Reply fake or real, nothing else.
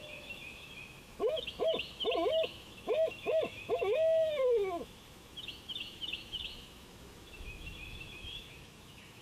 fake